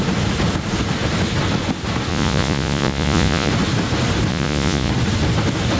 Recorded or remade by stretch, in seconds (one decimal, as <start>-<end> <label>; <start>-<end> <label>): 0.0-2.1 recorded; 2.1-3.5 remade; 3.5-4.3 recorded; 4.3-4.9 remade; 4.9-5.8 recorded